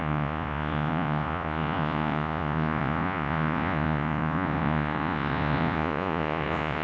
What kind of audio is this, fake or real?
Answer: fake